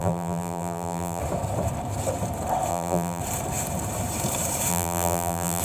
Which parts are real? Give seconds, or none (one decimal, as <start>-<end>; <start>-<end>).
1.2-2.7; 3.2-4.7